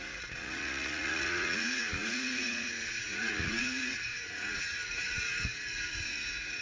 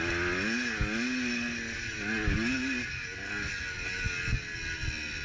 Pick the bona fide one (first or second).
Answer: second